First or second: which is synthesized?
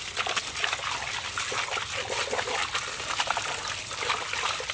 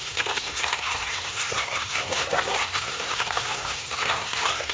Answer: second